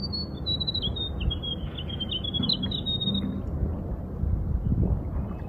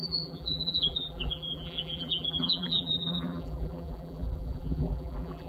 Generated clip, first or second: second